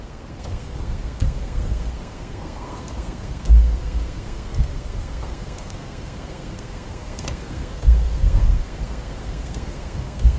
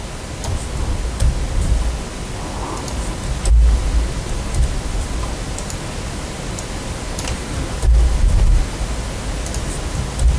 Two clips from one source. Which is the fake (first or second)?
first